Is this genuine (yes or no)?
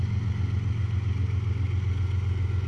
yes